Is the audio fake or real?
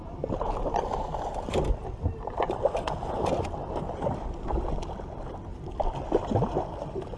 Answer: real